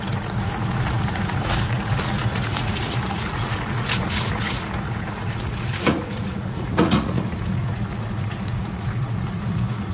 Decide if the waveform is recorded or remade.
remade